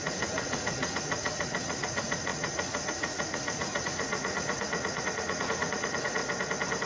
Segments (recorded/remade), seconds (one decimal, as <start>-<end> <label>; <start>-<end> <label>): 0.0-6.2 remade; 6.2-6.9 recorded